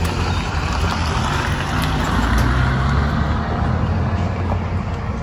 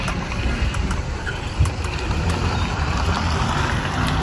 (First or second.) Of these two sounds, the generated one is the second